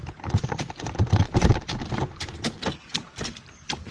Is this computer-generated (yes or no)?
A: yes